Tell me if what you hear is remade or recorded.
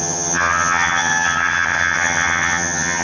remade